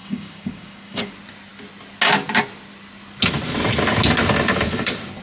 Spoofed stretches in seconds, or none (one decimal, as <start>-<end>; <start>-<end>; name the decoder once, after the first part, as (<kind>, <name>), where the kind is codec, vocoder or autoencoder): 0.0-1.1 (codec, DAC)